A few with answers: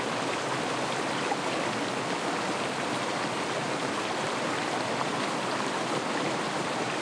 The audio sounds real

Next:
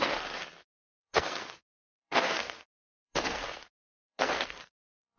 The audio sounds fake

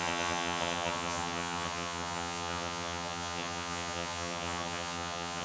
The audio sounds fake